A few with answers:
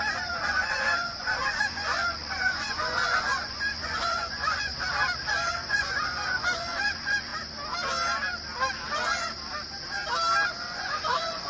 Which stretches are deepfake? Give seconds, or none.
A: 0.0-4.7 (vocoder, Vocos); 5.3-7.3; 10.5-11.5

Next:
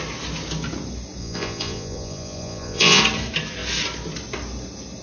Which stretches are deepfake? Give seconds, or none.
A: 1.2-3.0 (vocoder, Vocos)